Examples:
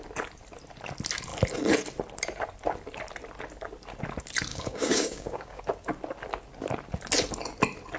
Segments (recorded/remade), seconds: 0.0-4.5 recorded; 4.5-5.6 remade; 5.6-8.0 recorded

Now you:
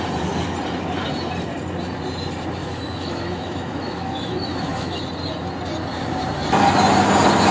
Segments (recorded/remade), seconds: 0.0-2.6 recorded; 2.6-5.0 remade; 5.0-7.5 recorded

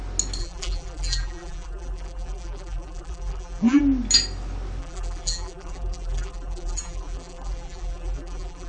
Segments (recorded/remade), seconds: 0.0-0.4 recorded; 0.4-3.8 remade; 3.8-4.8 recorded; 4.8-8.7 remade

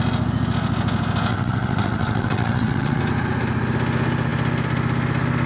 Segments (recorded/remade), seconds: 0.0-1.3 recorded; 1.3-3.0 remade; 3.0-5.5 recorded

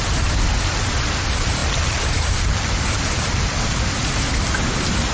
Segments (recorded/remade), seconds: 0.0-1.6 recorded; 1.6-3.8 remade; 3.8-5.1 recorded

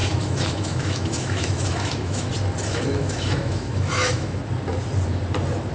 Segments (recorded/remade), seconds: 0.0-2.3 remade; 2.3-2.7 recorded; 2.7-4.4 remade; 4.4-5.7 recorded

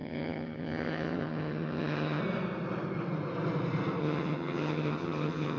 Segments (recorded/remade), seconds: 0.0-2.2 remade; 2.2-4.0 recorded; 4.0-5.6 remade

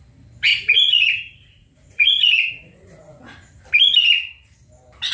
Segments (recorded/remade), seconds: 0.0-0.5 recorded; 0.5-3.6 remade; 3.6-5.1 recorded